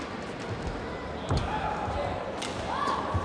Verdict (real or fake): real